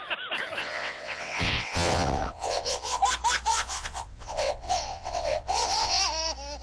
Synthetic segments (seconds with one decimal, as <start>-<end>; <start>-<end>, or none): 0.6-3.0; 3.5-6.0